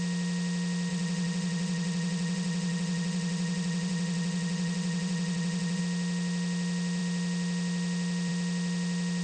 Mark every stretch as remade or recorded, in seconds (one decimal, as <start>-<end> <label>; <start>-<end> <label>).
0.0-0.9 recorded; 0.9-5.8 remade; 5.8-9.2 recorded